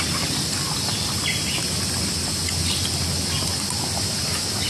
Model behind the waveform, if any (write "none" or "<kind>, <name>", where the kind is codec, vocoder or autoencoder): none